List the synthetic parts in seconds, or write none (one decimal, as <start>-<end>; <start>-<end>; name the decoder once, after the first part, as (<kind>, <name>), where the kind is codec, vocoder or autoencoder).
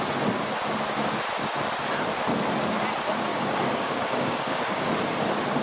3.3-4.9 (codec, DAC)